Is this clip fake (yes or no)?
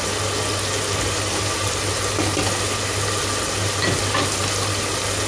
no